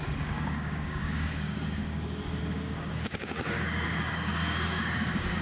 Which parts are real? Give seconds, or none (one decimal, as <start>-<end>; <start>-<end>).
none